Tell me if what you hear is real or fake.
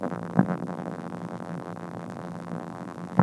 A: fake